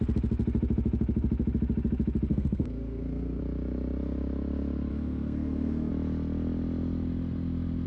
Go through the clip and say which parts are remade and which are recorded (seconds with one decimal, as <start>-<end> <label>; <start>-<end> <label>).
0.0-2.3 recorded; 2.3-3.4 remade; 3.4-4.9 recorded; 4.9-5.9 remade; 5.9-7.9 recorded